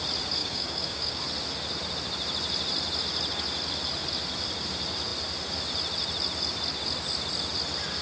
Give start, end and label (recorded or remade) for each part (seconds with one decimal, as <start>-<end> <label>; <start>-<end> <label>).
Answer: 0.0-0.4 recorded; 0.4-1.2 remade; 1.2-8.0 recorded